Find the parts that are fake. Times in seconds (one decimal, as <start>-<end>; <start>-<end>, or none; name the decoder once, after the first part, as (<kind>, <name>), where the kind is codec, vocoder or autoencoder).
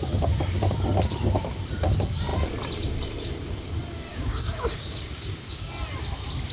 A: 4.1-5.7 (codec, DAC)